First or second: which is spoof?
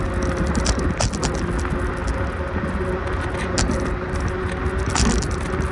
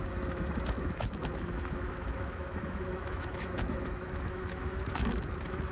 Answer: second